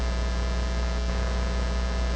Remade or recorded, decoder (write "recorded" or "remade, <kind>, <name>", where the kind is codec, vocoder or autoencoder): recorded